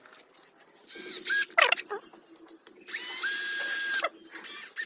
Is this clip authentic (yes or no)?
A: yes